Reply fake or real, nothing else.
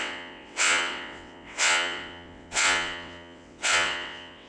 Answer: fake